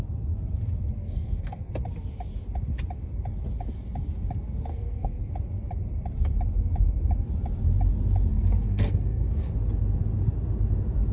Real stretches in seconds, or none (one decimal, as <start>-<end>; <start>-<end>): 0.0-1.0; 1.7-4.7; 5.3-8.3; 9.5-11.1